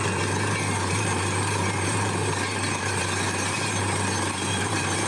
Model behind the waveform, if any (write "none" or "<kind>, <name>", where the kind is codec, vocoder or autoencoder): vocoder, BigVGAN v2